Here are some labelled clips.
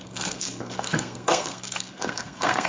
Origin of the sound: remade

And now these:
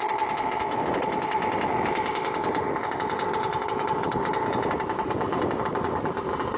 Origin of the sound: recorded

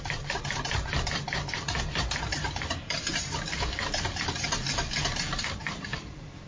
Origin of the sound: remade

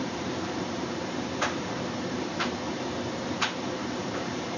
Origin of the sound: remade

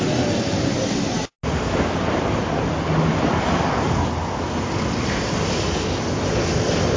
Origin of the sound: recorded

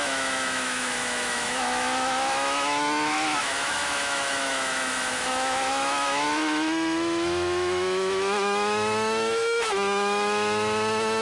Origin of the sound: remade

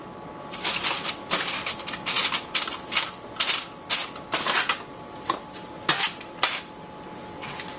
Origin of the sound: recorded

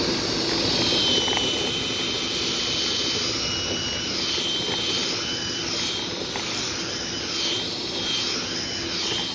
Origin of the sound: recorded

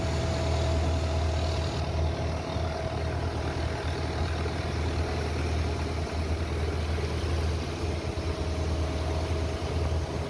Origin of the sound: recorded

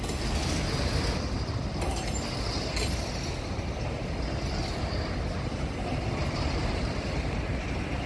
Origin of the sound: recorded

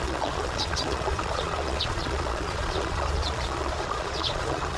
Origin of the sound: remade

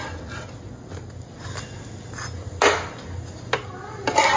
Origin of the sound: recorded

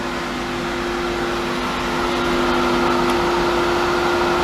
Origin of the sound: recorded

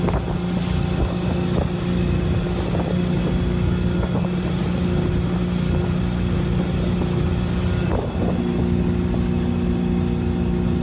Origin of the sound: recorded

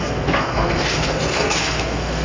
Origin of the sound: remade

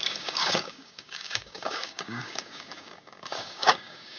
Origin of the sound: remade